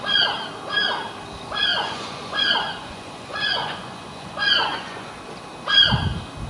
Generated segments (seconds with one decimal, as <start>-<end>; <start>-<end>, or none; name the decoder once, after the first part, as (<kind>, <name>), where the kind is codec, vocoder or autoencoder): 1.7-5.1 (vocoder, Vocos)